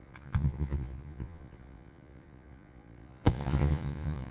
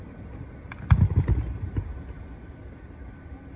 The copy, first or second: first